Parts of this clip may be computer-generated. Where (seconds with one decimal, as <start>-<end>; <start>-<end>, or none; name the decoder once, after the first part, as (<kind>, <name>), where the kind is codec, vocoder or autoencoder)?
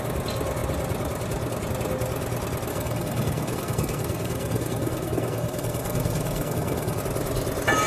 2.7-7.0 (codec, SNAC)